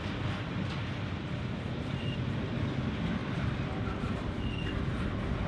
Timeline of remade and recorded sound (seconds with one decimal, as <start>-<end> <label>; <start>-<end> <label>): 0.0-2.8 remade; 2.8-3.2 recorded; 3.2-4.8 remade; 4.8-5.5 recorded